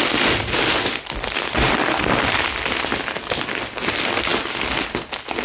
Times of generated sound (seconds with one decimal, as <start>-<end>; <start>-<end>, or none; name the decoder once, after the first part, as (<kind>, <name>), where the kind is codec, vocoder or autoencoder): none